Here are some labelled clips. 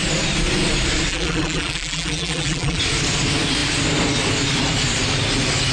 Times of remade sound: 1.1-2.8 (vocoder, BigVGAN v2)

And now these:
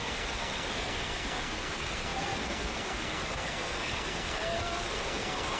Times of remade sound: 0.0-5.6 (codec, SNAC)